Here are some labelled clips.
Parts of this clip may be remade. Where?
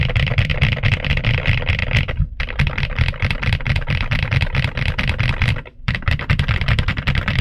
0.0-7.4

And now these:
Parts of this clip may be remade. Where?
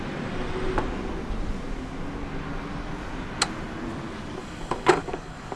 4.4-5.6